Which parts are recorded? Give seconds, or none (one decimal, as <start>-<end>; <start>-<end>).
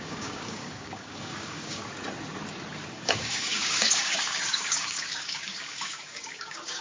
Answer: 1.8-2.9